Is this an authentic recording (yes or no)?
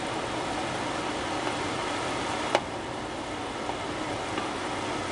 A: yes